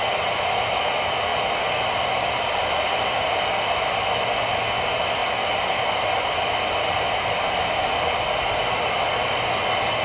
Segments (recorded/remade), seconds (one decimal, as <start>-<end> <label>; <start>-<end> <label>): 0.0-10.0 recorded